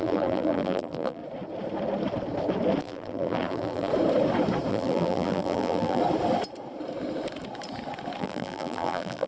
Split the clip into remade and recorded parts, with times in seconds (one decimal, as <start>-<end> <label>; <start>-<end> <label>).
0.0-1.2 remade; 1.2-2.8 recorded; 2.8-3.9 remade; 3.9-4.7 recorded; 4.7-6.0 remade; 6.0-8.2 recorded; 8.2-9.3 remade